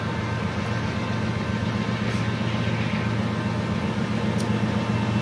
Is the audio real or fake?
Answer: real